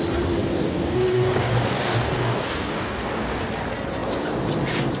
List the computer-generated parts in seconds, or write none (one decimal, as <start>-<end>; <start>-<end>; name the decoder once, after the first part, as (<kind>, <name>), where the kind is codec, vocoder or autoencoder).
0.4-3.4 (codec, DAC)